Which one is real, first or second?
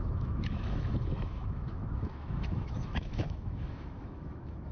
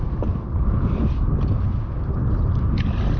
second